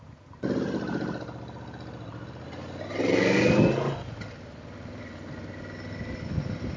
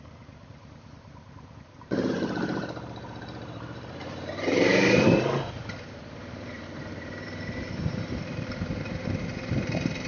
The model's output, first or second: second